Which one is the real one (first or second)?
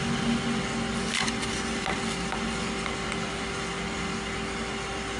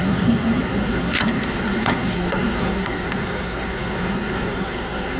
first